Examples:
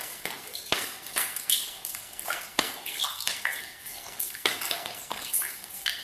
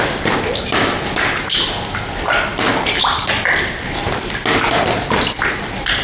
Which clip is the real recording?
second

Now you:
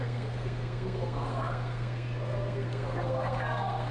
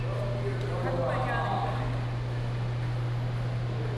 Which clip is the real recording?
second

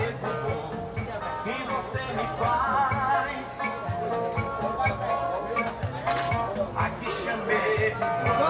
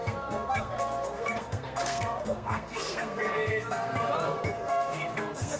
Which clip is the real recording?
first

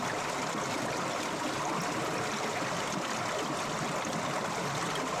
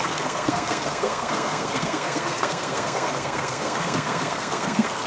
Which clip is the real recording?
first